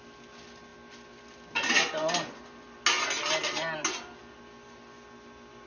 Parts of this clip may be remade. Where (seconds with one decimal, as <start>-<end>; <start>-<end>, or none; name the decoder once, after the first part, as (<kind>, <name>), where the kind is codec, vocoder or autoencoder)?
none